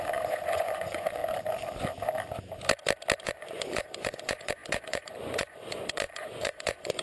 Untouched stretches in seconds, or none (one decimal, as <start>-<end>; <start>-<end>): 1.2-3.2